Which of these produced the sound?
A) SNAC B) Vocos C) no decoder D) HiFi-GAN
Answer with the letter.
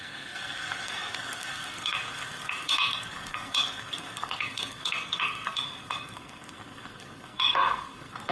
A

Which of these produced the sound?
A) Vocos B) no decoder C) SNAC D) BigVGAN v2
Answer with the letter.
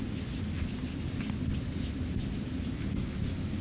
B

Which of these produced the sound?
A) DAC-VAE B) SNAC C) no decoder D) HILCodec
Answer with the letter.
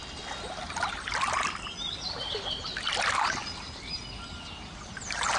C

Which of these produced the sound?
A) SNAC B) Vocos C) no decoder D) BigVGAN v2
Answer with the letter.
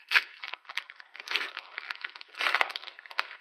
A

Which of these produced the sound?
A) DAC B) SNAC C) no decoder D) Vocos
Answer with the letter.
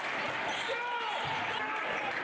C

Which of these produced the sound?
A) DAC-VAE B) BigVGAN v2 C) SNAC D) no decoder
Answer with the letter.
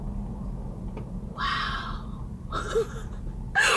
D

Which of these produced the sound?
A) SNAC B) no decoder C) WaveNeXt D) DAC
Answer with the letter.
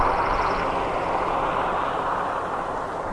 B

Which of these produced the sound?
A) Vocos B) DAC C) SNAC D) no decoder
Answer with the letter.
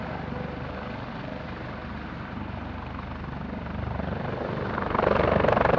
D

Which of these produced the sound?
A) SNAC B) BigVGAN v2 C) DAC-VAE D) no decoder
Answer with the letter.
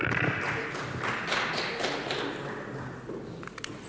D